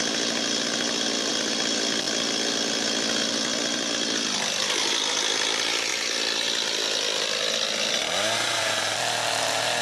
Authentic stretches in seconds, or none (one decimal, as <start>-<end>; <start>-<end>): 0.0-5.9; 9.0-9.8